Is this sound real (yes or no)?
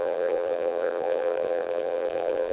no